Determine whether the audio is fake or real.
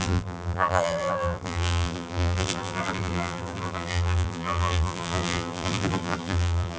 fake